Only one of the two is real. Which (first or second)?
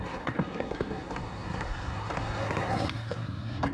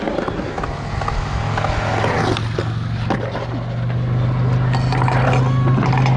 second